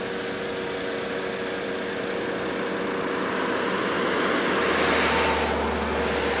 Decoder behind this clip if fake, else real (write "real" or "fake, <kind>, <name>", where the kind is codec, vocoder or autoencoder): real